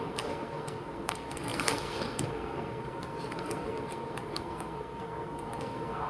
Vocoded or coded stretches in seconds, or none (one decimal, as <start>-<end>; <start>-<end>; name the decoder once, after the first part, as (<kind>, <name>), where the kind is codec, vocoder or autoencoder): 0.0-6.1 (codec, SNAC)